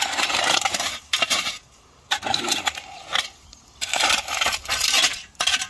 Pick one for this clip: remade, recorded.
remade